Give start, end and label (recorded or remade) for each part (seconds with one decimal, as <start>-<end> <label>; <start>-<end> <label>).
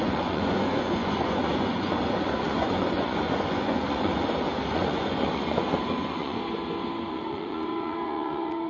0.0-4.1 remade; 4.1-4.7 recorded; 4.7-6.4 remade; 6.4-7.1 recorded; 7.1-8.7 remade